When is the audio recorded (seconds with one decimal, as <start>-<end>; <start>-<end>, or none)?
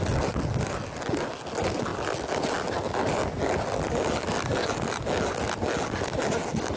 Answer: 0.0-6.8